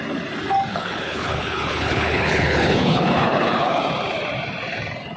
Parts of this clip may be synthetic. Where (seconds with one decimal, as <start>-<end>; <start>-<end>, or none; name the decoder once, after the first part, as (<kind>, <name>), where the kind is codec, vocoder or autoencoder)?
0.7-3.8 (codec, HILCodec)

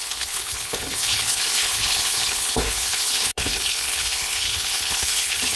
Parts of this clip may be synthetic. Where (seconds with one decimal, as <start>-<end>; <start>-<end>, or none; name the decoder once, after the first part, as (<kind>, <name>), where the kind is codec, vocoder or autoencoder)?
0.0-5.6 (codec, HILCodec)

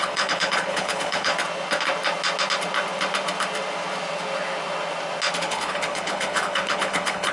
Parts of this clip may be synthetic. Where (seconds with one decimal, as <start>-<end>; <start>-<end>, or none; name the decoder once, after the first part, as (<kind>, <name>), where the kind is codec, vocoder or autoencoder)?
0.0-1.3 (codec, HILCodec); 5.4-7.3

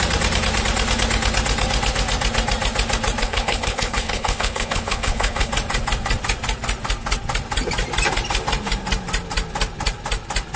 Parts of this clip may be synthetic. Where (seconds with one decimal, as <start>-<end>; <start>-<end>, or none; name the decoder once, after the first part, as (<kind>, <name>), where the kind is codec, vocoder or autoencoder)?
3.2-5.5 (codec, HILCodec)